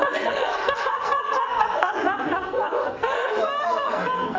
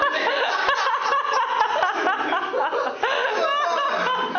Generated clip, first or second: first